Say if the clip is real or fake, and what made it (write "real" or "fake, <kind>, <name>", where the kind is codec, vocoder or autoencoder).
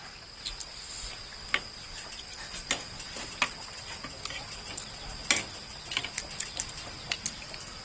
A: real